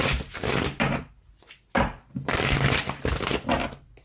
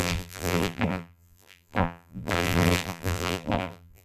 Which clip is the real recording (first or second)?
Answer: first